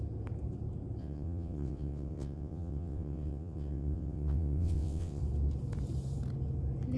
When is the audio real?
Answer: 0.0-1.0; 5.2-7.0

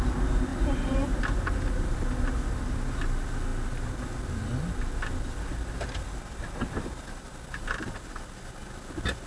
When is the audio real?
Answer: 0.0-0.5; 1.2-9.3

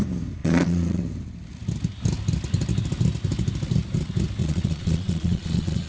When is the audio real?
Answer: 0.0-0.4; 1.0-4.4